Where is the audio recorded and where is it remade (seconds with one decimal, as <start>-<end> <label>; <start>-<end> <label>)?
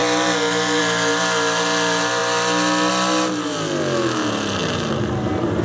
0.0-5.6 recorded